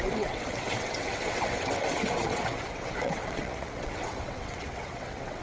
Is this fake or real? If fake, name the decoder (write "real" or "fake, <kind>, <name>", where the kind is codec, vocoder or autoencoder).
fake, vocoder, WaveNeXt